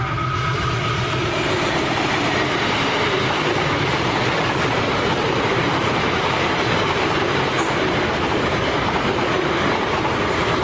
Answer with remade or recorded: remade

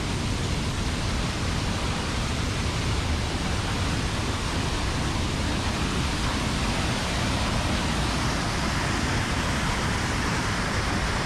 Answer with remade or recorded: recorded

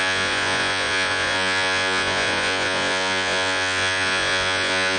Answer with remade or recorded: remade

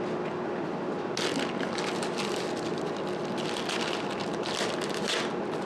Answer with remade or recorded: recorded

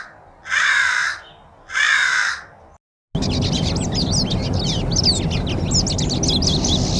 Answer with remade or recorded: recorded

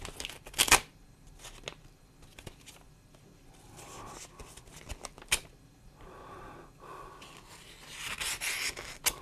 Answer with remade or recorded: recorded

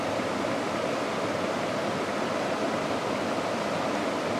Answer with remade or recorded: recorded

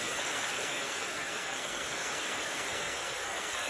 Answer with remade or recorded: remade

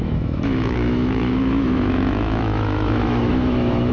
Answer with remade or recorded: remade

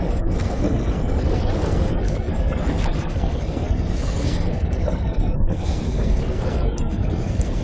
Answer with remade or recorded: remade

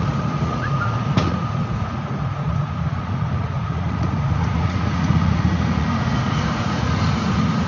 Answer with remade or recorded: remade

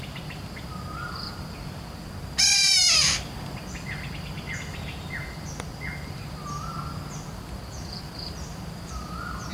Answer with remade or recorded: recorded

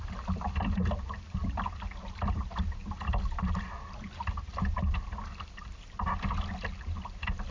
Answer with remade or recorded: recorded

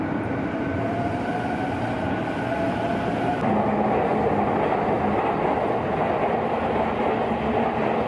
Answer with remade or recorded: recorded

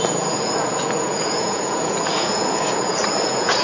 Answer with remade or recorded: remade